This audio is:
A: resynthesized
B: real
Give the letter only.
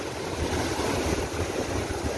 B